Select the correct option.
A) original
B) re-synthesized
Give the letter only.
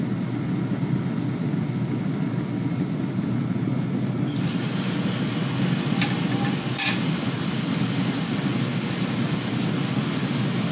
A